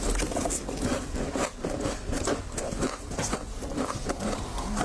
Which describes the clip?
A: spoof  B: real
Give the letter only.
B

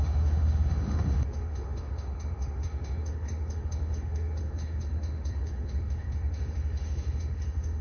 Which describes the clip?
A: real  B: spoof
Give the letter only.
B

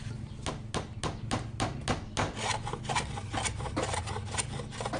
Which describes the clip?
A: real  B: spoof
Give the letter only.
A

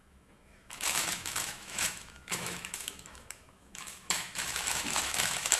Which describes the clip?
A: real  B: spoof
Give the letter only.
B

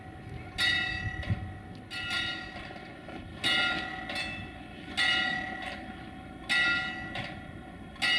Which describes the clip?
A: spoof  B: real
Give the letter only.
B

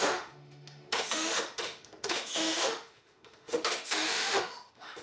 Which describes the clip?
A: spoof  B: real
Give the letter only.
A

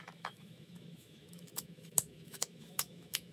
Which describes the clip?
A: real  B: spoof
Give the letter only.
B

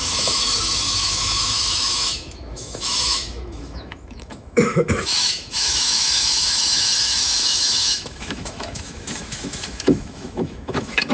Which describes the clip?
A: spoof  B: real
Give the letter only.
A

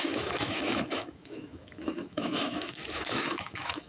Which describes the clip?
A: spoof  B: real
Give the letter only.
A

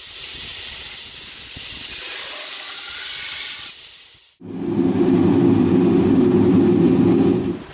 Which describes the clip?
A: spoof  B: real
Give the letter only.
B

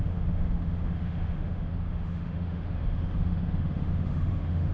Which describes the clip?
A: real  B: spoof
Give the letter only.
B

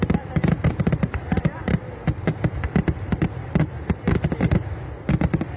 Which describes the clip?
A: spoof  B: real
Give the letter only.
B